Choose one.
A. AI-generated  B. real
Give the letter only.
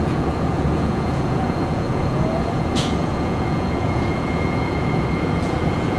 A